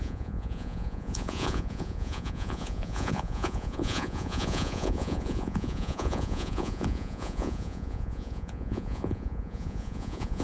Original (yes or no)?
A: no